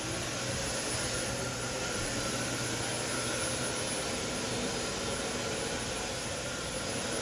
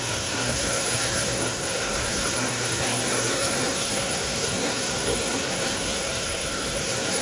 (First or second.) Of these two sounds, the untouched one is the first